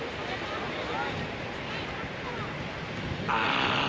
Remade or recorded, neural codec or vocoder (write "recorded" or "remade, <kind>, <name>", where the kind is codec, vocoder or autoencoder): recorded